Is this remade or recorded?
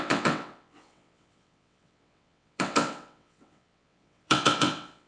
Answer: remade